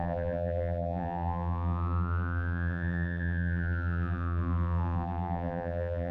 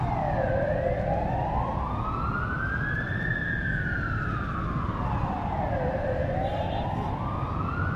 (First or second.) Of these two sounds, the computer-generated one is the first